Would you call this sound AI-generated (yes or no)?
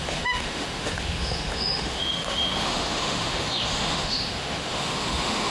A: yes